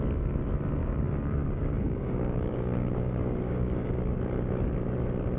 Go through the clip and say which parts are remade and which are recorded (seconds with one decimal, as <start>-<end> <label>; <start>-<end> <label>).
0.0-0.8 recorded; 0.8-3.9 remade; 3.9-5.4 recorded